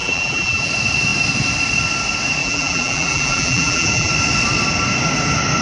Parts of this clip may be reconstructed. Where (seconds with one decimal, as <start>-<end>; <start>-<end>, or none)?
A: 0.0-0.7; 2.4-4.1

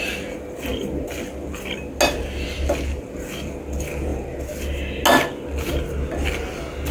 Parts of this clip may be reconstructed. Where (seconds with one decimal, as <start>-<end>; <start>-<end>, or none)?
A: none

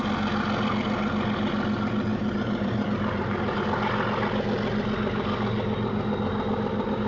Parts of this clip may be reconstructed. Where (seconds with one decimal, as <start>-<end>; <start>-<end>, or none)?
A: 2.1-3.6